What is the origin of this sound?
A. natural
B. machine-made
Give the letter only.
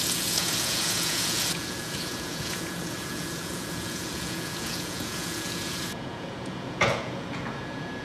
B